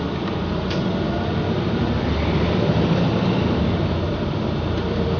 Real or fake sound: fake